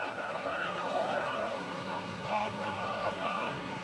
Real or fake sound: fake